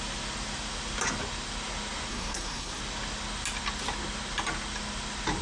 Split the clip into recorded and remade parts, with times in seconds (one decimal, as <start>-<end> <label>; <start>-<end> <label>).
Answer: 0.0-2.1 recorded; 2.1-2.8 remade; 2.8-5.4 recorded